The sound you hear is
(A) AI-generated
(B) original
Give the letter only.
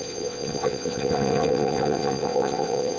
A